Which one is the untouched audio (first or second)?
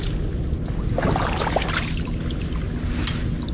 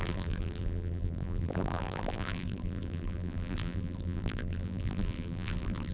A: first